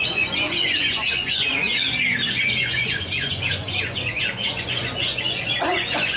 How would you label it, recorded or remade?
remade